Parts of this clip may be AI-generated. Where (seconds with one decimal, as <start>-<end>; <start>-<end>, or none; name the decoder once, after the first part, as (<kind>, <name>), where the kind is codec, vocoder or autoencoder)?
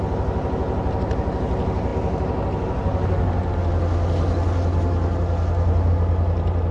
none